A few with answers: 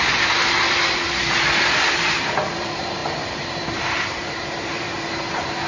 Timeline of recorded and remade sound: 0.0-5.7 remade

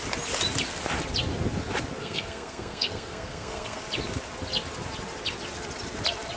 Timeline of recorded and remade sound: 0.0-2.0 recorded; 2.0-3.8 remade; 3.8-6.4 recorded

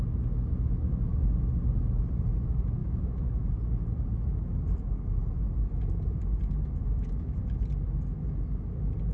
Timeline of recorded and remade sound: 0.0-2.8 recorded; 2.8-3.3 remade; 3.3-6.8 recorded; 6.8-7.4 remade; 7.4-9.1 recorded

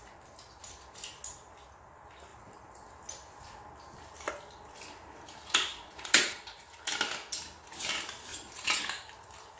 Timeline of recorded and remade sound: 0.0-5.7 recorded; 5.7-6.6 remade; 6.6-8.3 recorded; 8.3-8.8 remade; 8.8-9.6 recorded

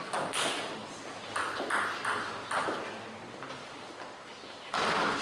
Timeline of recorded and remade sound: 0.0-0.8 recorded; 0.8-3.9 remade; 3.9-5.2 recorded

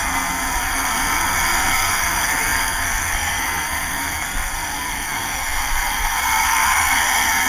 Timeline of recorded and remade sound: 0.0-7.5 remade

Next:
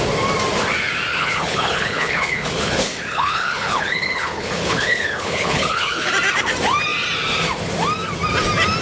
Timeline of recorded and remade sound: 0.0-1.1 recorded; 1.1-6.1 remade; 6.1-8.8 recorded

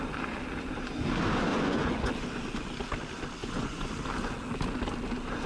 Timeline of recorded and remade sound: 0.0-1.5 recorded; 1.5-2.1 remade; 2.1-3.4 recorded; 3.4-3.9 remade; 3.9-5.5 recorded